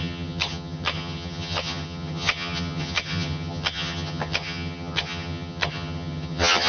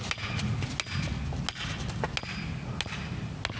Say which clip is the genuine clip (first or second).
second